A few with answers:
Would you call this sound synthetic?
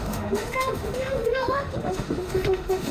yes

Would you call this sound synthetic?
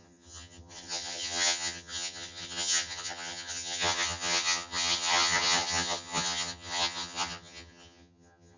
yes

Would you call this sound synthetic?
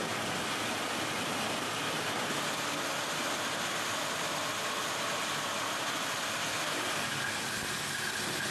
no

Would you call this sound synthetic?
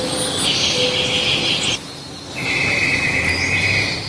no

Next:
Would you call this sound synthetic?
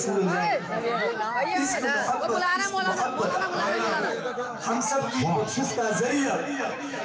yes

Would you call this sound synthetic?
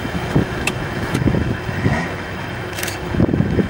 yes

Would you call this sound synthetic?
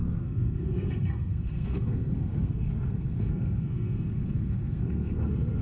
yes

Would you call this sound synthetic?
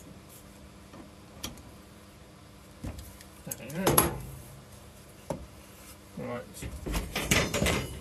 yes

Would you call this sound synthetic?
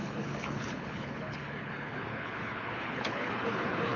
yes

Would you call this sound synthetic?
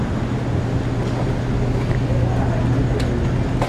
no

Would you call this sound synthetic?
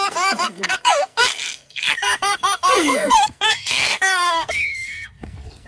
yes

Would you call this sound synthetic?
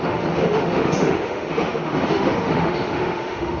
yes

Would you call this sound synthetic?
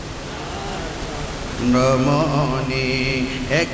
no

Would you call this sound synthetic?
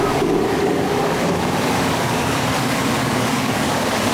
yes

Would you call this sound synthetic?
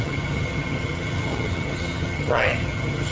yes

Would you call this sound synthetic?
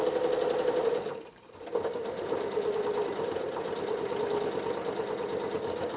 no